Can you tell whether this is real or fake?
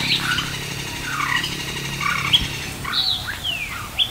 real